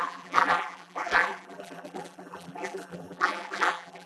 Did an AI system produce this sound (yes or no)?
yes